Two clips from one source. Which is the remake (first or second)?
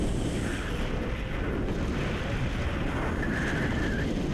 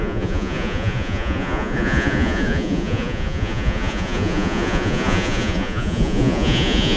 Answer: second